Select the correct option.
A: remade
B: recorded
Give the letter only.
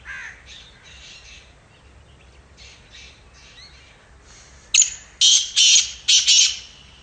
B